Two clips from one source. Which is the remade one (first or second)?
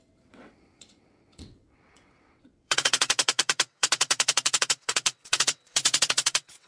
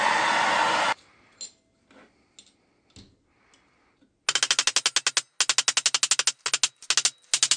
first